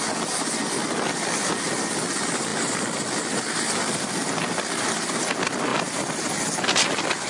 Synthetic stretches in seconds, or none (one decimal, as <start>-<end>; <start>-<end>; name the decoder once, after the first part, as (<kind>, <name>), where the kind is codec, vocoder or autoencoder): 5.7-6.3 (vocoder, BigVGAN v2)